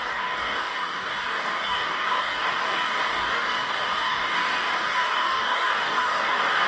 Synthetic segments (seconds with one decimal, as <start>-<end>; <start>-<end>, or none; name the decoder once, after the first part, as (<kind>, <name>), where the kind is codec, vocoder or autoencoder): 0.0-6.7 (codec, DAC)